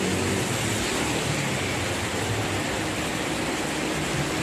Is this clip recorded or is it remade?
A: recorded